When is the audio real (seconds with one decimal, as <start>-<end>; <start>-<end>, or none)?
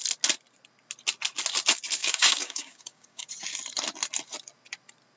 0.0-2.0; 3.3-5.2